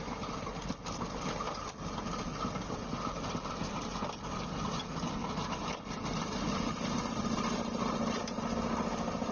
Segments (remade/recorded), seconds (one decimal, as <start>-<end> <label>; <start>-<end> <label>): 0.0-9.3 recorded